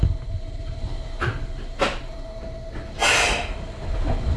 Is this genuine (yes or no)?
yes